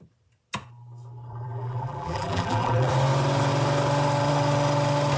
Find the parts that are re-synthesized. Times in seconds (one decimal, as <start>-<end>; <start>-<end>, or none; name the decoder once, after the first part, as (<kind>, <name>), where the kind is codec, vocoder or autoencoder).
1.3-2.9 (vocoder, BigVGAN v2)